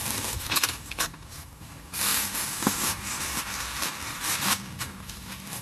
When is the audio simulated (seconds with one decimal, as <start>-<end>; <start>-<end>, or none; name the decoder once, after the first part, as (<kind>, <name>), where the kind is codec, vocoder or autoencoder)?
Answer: 0.0-5.6 (codec, DAC)